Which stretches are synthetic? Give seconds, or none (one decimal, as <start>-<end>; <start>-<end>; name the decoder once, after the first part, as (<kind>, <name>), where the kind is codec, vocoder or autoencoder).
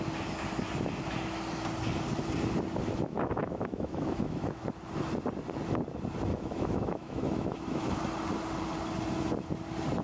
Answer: 3.1-4.6 (autoencoder, DAC-VAE); 6.3-7.9